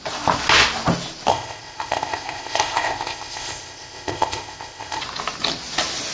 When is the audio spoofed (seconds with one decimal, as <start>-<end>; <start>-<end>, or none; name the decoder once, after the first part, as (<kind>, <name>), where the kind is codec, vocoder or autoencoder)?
1.3-5.0 (codec, ZipCodec)